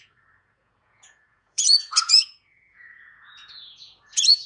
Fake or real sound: fake